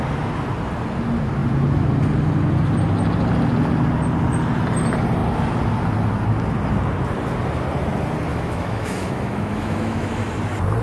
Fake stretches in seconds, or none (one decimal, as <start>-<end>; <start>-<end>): 8.3-10.3